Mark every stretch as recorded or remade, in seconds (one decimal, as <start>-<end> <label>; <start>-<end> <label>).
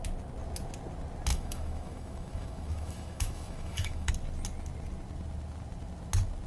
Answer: 0.0-1.3 recorded; 1.3-4.1 remade; 4.1-6.5 recorded